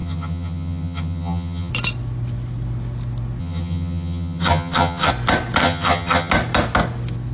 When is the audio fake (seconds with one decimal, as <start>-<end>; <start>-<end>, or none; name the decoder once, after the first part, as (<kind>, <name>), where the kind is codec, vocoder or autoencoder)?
0.0-1.7 (vocoder, HiFi-GAN); 3.4-5.1; 5.6-6.3

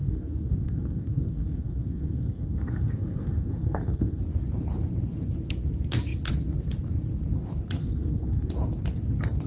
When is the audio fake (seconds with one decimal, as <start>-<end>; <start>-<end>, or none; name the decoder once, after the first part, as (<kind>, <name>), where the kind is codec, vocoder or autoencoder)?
0.0-4.2 (codec, SNAC); 7.8-8.5

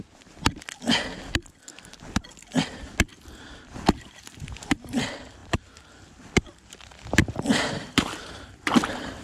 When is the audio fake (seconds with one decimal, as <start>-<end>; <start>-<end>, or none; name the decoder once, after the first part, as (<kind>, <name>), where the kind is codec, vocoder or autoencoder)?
3.1-4.3 (vocoder, BigVGAN v2); 5.4-6.2; 6.9-9.2

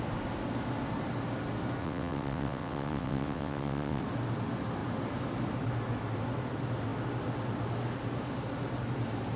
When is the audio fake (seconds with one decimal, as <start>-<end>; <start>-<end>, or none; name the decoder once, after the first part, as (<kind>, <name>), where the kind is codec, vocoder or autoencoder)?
1.8-4.0 (vocoder, WaveNeXt)

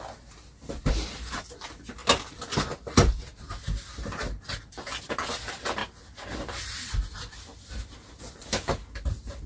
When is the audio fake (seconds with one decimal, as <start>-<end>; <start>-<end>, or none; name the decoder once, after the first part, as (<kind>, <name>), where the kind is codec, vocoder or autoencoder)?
none

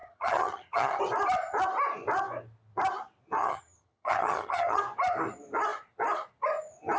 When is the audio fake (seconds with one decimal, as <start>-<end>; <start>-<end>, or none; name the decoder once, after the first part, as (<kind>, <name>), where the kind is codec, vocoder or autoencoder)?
0.0-1.0 (vocoder, HiFi-GAN); 3.4-4.8

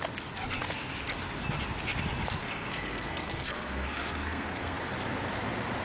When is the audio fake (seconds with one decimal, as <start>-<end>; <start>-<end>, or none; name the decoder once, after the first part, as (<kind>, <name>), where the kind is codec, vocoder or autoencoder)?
2.4-4.8 (codec, SNAC)

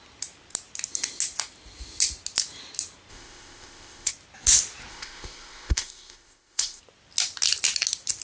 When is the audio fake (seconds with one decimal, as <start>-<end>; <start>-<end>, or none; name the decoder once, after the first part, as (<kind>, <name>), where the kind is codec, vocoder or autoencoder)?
3.1-4.1 (codec, ZipCodec); 4.9-6.8